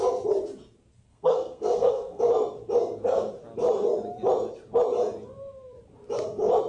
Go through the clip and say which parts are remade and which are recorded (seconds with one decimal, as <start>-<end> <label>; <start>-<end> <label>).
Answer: 0.0-1.1 recorded; 1.1-2.2 remade; 2.2-6.7 recorded